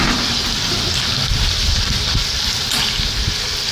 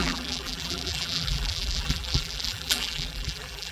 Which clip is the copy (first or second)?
second